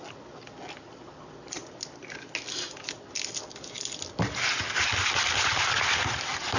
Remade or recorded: recorded